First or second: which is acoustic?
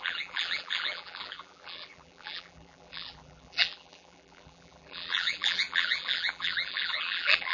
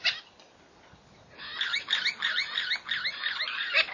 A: second